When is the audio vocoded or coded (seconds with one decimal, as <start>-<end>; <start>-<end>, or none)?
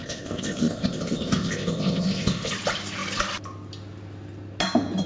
0.0-2.5